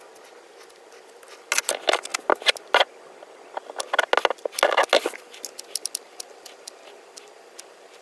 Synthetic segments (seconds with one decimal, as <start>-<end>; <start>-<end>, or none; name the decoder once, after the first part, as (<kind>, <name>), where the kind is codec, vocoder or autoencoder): none

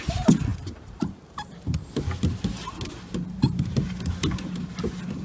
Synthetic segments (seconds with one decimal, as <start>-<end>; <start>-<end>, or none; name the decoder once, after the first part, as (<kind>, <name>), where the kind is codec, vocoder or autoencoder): 0.5-1.9 (vocoder, BigVGAN v2)

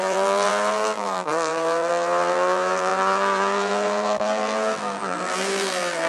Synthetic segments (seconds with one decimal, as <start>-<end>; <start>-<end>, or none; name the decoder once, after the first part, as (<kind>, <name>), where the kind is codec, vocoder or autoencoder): 0.0-6.1 (vocoder, BigVGAN v2)

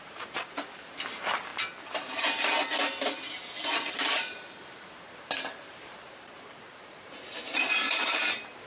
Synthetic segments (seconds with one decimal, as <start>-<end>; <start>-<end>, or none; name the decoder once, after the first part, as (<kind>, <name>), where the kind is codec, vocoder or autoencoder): 0.0-1.5 (vocoder, BigVGAN v2); 3.9-8.7

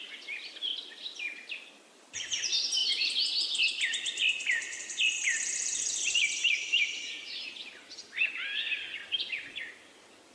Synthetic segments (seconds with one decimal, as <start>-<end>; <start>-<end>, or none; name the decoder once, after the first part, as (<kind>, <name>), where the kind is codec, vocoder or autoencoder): 0.0-0.7 (vocoder, BigVGAN v2); 1.9-10.3

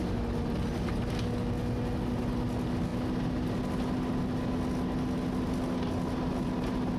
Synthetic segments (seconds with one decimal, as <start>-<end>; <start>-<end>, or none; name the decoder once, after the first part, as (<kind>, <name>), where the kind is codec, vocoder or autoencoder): none